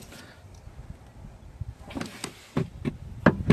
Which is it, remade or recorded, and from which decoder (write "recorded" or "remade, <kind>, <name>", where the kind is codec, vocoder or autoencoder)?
recorded